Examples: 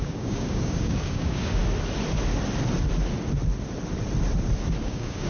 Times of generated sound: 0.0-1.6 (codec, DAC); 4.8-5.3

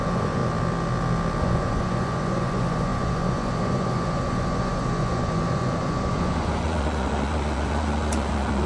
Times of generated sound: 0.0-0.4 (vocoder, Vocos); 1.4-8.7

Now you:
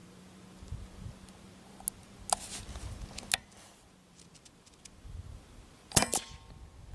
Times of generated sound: none